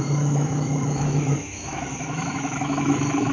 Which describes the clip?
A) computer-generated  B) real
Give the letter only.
A